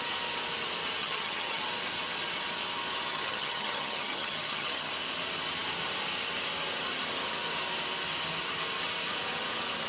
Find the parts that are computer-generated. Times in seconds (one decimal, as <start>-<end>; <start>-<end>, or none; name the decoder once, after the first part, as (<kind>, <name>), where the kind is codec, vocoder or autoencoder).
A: 1.0-1.6 (vocoder, HiFi-GAN); 3.1-4.9